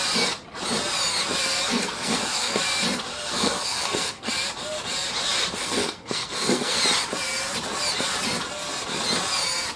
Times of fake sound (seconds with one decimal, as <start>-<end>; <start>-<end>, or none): 1.7-2.6; 3.1-4.3; 5.6-6.8